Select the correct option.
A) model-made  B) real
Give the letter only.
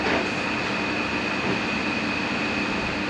B